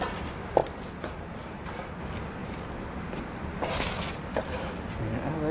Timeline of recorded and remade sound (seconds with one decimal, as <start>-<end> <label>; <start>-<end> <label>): 0.0-0.6 recorded; 0.6-2.0 remade; 2.0-2.4 recorded; 2.4-4.7 remade; 4.7-5.5 recorded